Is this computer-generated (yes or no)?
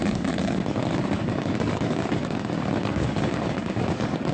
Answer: yes